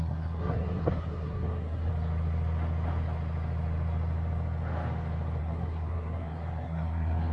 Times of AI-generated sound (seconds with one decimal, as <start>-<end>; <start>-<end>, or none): 0.0-1.9; 5.4-7.3